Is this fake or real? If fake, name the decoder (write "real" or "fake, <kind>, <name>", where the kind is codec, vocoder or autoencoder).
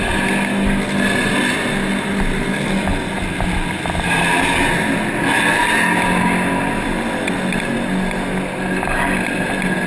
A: real